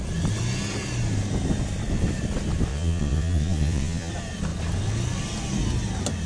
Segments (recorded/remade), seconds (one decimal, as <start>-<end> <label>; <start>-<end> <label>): 0.0-2.7 recorded; 2.7-4.1 remade; 4.1-6.3 recorded